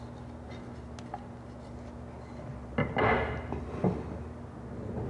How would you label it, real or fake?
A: real